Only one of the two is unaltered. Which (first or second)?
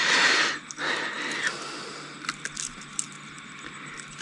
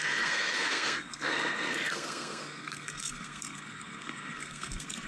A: first